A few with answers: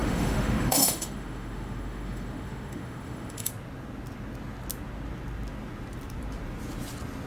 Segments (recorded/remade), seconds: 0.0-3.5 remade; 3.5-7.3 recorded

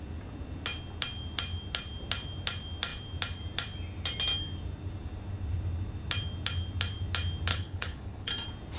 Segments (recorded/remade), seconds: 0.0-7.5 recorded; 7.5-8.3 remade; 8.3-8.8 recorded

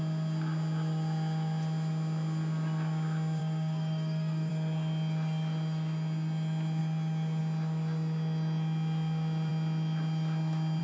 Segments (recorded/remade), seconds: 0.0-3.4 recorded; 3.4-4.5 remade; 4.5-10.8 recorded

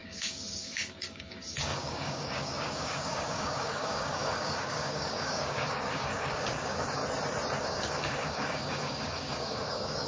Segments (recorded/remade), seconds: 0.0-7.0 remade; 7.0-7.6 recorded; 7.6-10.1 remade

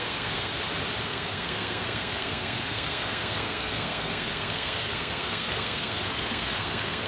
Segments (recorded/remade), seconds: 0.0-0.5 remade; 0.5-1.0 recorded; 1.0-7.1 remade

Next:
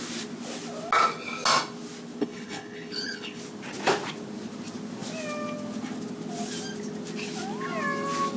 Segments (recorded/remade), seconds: 0.0-2.2 recorded; 2.2-3.4 remade; 3.4-8.4 recorded

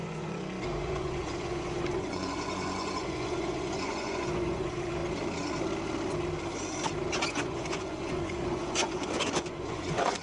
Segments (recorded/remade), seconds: 0.0-5.0 remade; 5.0-7.3 recorded; 7.3-10.2 remade

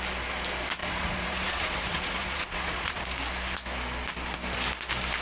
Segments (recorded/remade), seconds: 0.0-0.8 recorded; 0.8-3.0 remade; 3.0-5.2 recorded